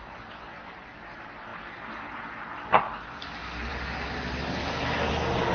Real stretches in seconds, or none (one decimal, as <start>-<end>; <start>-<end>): 0.0-5.5